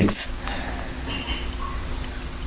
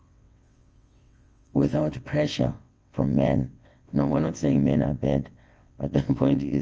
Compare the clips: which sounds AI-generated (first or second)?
second